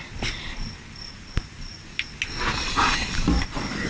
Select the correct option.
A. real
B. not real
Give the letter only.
A